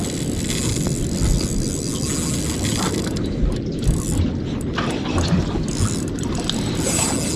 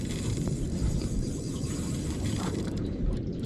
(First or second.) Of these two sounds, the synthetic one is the second